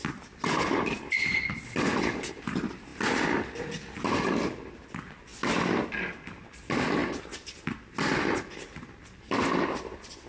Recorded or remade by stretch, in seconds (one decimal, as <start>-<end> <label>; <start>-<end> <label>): 0.0-10.3 recorded